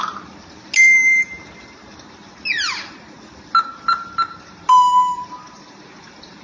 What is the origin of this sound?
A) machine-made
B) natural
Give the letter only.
B